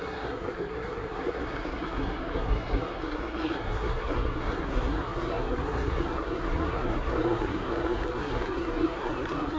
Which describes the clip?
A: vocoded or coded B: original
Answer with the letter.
A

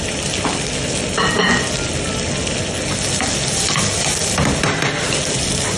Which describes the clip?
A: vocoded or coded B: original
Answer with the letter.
B